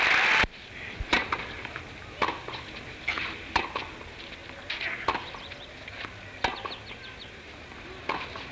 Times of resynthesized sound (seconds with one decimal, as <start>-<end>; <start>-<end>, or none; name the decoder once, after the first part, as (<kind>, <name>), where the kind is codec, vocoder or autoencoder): 0.0-4.4 (vocoder, BigVGAN v2); 7.8-8.5